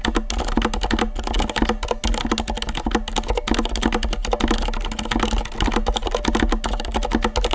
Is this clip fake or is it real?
real